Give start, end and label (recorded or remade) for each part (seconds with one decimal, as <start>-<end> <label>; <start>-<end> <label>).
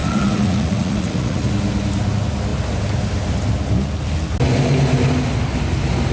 0.0-1.5 remade; 1.5-6.1 recorded